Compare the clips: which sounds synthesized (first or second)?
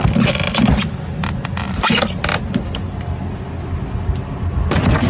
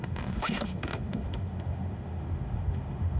second